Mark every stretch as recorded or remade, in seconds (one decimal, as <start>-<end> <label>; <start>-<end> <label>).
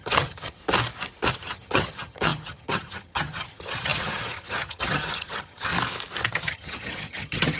0.0-0.6 remade; 0.6-1.3 recorded; 1.3-5.7 remade; 5.7-6.3 recorded; 6.3-7.6 remade